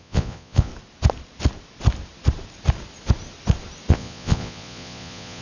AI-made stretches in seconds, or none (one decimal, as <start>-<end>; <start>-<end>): 0.0-0.7; 3.9-5.4